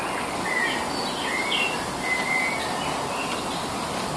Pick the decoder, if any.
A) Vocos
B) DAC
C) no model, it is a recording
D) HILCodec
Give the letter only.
C